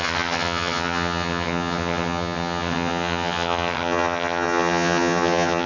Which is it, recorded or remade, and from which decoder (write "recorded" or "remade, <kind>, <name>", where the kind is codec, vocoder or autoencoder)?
remade, vocoder, HiFi-GAN